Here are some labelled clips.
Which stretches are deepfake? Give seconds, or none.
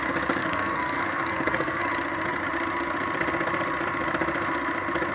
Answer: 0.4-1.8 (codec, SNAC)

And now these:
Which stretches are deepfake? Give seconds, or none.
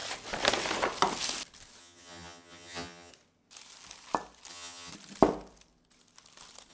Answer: 1.8-3.1 (vocoder, HiFi-GAN); 4.5-4.9